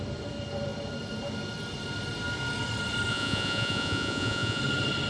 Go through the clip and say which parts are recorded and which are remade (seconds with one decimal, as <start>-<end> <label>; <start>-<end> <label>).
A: 0.0-3.1 recorded; 3.1-4.6 remade; 4.6-5.1 recorded